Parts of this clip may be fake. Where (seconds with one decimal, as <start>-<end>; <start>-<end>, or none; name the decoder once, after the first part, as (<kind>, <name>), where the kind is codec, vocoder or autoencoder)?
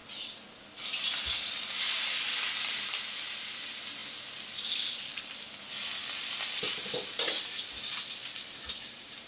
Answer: none